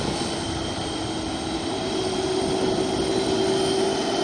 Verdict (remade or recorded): recorded